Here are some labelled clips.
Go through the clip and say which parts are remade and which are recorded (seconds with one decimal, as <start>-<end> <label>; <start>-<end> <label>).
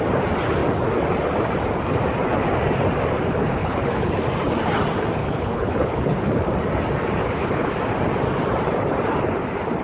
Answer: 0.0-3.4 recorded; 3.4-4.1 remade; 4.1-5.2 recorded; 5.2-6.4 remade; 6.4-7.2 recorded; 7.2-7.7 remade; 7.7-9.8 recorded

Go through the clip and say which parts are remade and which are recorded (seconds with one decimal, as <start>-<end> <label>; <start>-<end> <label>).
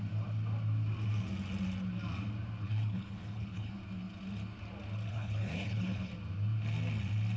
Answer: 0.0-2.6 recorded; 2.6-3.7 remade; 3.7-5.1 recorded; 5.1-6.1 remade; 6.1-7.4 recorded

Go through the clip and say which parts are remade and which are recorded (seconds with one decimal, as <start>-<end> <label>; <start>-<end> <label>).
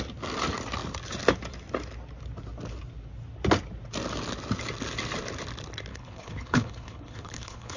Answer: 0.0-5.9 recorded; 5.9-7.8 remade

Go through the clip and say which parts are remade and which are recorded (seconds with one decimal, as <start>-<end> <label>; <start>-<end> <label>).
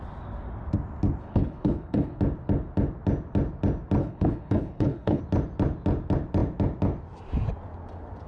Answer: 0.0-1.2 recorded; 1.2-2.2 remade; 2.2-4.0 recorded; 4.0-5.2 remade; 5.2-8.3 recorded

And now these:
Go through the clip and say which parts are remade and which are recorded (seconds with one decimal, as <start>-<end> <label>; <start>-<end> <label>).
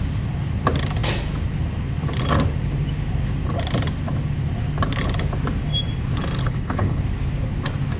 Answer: 0.0-6.4 recorded; 6.4-7.0 remade; 7.0-8.0 recorded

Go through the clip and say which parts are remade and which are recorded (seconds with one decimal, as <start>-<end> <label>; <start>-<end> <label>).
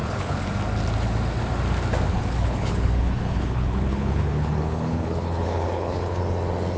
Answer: 0.0-0.5 remade; 0.5-2.1 recorded; 2.1-6.2 remade; 6.2-6.8 recorded